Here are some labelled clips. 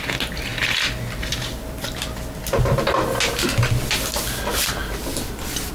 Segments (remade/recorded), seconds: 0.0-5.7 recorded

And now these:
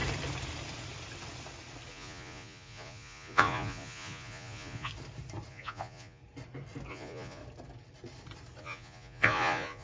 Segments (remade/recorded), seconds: 0.0-1.9 recorded; 1.9-4.9 remade; 4.9-5.5 recorded; 5.5-6.2 remade; 6.2-6.9 recorded; 6.9-7.4 remade; 7.4-8.6 recorded; 8.6-9.8 remade

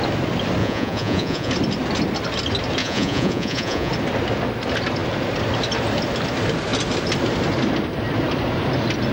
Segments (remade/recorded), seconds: 0.0-0.6 recorded; 0.6-1.5 remade; 1.5-2.8 recorded; 2.8-3.9 remade; 3.9-9.1 recorded

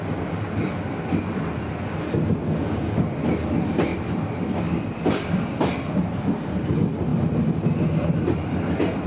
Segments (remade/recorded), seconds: 0.0-9.1 recorded

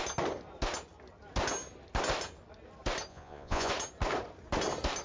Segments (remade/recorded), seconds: 0.0-3.1 recorded; 3.1-3.7 remade; 3.7-5.0 recorded

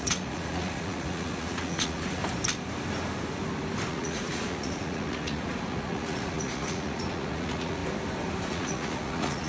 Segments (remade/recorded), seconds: 0.0-2.2 remade; 2.2-3.9 recorded; 3.9-7.8 remade; 7.8-8.5 recorded; 8.5-9.5 remade

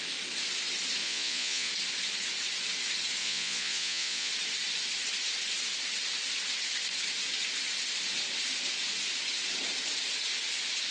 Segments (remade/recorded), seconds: 0.0-1.0 recorded; 1.0-1.7 remade; 1.7-3.2 recorded; 3.2-4.3 remade; 4.3-10.9 recorded